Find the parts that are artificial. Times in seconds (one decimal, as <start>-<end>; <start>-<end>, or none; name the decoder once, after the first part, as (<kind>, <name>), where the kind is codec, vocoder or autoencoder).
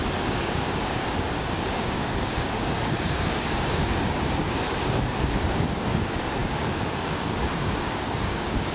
0.0-8.7 (codec, DAC)